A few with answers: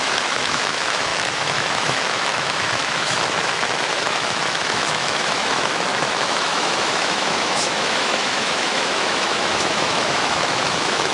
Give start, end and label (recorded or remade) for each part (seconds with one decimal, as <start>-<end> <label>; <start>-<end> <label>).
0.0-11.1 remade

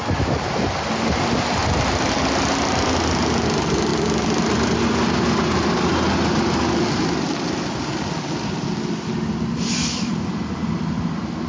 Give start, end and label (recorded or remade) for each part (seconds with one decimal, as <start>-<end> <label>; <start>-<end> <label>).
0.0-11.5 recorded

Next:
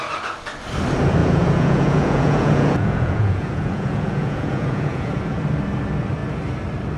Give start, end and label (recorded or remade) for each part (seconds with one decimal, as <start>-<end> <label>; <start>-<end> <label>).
0.0-1.2 recorded; 1.2-5.4 remade; 5.4-7.0 recorded

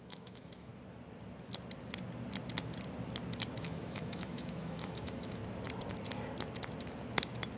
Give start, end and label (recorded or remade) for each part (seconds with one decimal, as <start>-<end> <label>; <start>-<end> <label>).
0.0-0.7 remade; 0.7-3.6 recorded; 3.6-5.4 remade; 5.4-7.6 recorded

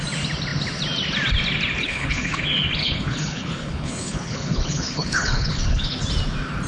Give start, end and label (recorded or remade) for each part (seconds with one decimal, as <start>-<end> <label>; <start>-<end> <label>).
0.0-1.8 recorded; 1.8-2.4 remade; 2.4-2.8 recorded; 2.8-6.0 remade; 6.0-6.7 recorded

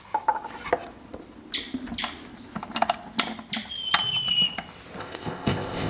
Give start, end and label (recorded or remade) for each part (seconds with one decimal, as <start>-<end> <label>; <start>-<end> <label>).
0.0-5.0 recorded; 5.0-5.9 remade